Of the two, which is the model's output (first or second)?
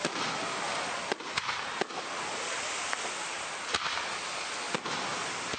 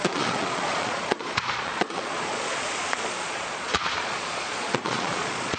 second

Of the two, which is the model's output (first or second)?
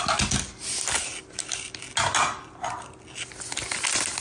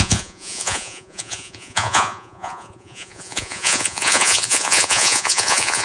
second